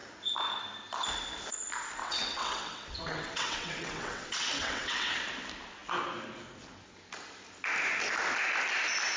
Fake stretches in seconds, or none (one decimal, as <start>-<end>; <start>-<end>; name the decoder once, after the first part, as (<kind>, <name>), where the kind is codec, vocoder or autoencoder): 2.0-5.1 (vocoder, WaveNeXt)